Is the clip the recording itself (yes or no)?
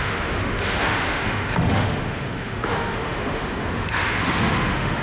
no